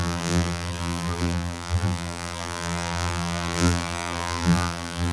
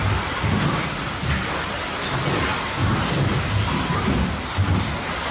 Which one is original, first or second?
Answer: second